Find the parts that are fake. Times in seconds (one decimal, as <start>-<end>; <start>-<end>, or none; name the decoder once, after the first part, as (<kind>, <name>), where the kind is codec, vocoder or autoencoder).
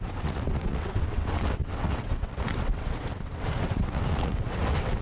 0.0-5.0 (vocoder, WaveNeXt)